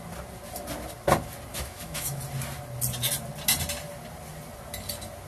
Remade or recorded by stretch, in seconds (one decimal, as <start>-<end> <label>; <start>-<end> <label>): 0.0-1.5 recorded; 1.5-2.2 remade; 2.2-5.3 recorded